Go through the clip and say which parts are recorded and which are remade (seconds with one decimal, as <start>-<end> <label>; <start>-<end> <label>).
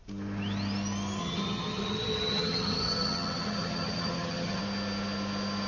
0.0-1.2 recorded; 1.2-4.6 remade; 4.6-5.7 recorded